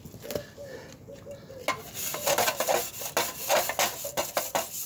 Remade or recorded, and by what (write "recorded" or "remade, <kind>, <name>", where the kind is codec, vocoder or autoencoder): recorded